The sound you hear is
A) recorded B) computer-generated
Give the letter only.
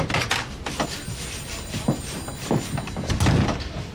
A